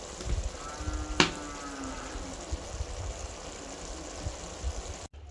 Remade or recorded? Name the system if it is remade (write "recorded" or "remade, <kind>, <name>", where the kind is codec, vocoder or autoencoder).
recorded